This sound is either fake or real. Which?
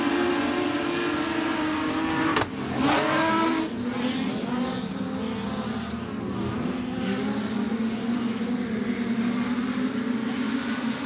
real